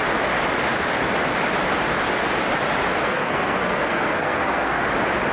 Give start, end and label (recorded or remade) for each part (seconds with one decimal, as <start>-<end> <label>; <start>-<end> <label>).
0.0-2.9 recorded; 2.9-4.8 remade; 4.8-5.3 recorded

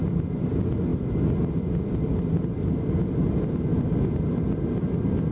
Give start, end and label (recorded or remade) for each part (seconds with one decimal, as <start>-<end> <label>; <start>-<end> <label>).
0.0-5.3 recorded